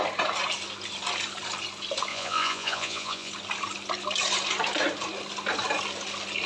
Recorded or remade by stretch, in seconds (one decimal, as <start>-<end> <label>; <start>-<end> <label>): 0.0-2.1 recorded; 2.1-3.3 remade; 3.3-6.5 recorded